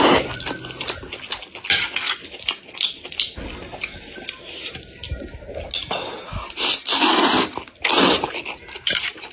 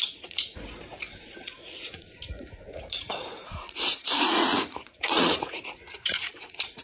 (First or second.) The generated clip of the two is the second